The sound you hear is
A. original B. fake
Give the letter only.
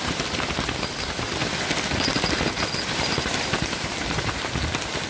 A